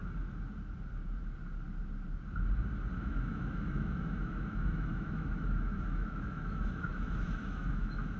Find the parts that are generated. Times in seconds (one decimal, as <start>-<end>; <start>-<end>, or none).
3.0-8.2